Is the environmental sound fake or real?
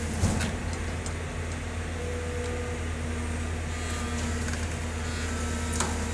real